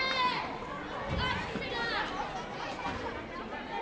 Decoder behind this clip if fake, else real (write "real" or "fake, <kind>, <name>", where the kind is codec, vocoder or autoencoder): real